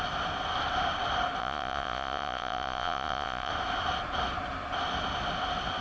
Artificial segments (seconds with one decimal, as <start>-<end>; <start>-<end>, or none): 1.4-3.5